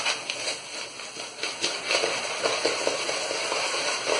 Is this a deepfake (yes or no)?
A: no